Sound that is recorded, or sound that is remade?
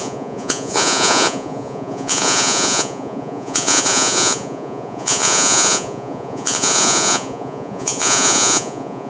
remade